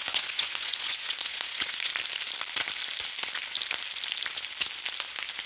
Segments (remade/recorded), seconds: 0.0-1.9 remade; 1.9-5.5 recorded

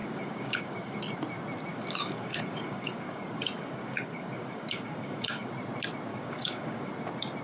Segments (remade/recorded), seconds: 0.0-1.0 remade; 1.0-1.7 recorded; 1.7-5.5 remade; 5.5-6.1 recorded; 6.1-6.9 remade; 6.9-7.4 recorded

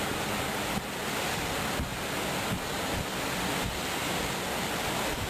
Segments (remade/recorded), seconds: 0.0-5.3 recorded

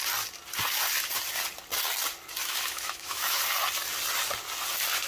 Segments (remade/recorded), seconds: 0.0-2.4 recorded; 2.4-3.4 remade; 3.4-5.1 recorded

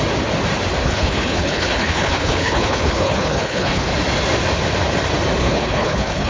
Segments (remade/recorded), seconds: 0.0-0.8 recorded; 0.8-3.9 remade; 3.9-5.4 recorded; 5.4-6.3 remade

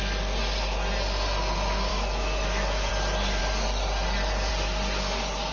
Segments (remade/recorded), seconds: 0.0-1.9 recorded; 1.9-2.9 remade; 2.9-5.5 recorded

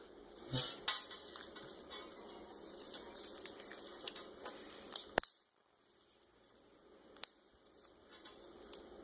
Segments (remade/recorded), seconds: 0.0-9.0 recorded